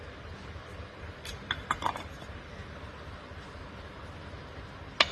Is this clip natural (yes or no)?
yes